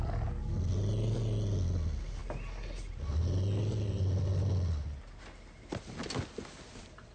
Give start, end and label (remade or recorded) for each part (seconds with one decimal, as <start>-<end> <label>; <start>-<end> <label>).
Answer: 0.0-7.1 recorded